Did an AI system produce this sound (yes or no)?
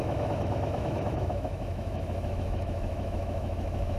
yes